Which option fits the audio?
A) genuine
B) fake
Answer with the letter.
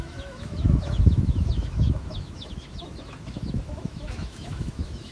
B